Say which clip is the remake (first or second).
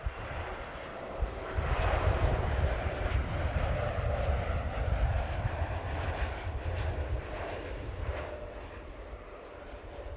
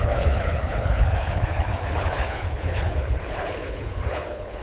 second